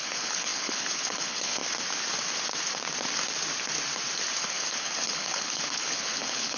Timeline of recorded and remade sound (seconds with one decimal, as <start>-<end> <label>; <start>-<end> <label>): 0.0-1.6 remade; 1.6-4.4 recorded; 4.4-6.6 remade

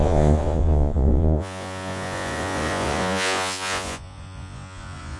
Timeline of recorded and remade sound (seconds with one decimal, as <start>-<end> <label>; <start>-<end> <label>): 0.0-5.2 remade

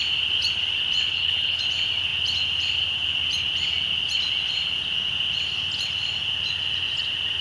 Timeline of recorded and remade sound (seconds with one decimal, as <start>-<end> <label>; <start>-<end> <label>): 0.0-1.1 recorded; 1.1-1.6 remade; 1.6-7.4 recorded

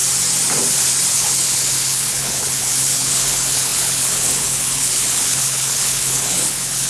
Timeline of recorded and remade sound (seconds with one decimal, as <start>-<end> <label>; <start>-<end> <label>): 0.0-1.1 recorded; 1.1-6.9 remade

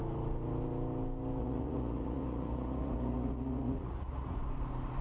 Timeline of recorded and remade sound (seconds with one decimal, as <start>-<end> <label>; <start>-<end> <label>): 0.0-1.4 recorded; 1.4-4.4 remade; 4.4-5.0 recorded

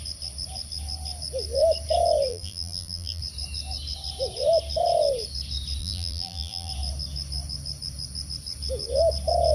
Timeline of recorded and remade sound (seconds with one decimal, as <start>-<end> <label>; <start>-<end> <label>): 0.0-2.3 recorded; 2.3-3.2 remade; 3.2-5.8 recorded; 5.8-6.7 remade; 6.7-9.5 recorded